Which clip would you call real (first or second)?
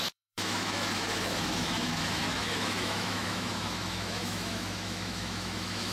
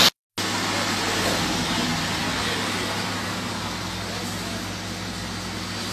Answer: second